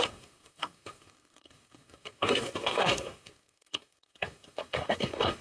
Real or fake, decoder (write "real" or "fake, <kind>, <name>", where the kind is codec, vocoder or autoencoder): fake, codec, SNAC